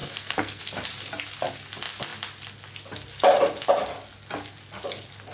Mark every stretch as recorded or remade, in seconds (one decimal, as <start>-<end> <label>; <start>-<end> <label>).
0.0-0.6 remade; 0.6-5.3 recorded